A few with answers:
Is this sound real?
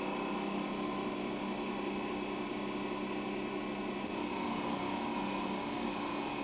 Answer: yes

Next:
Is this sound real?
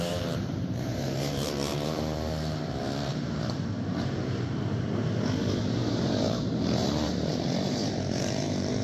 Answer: no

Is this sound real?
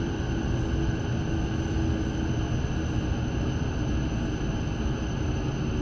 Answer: yes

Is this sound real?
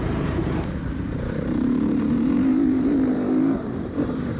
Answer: no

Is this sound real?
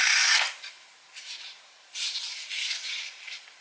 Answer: no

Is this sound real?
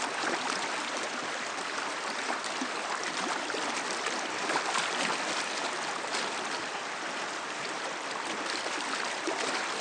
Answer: no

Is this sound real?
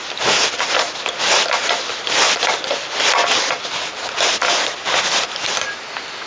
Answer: yes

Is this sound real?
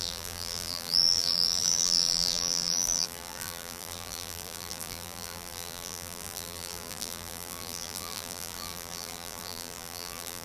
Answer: no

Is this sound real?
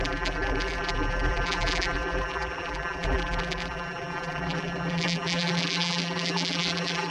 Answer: no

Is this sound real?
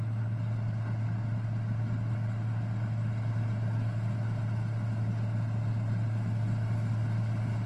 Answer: yes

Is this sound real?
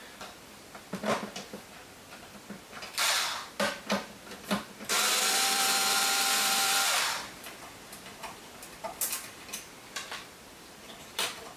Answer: no